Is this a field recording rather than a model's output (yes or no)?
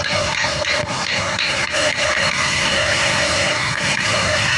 no